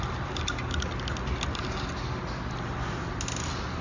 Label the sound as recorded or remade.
recorded